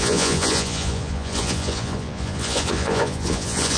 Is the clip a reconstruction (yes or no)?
yes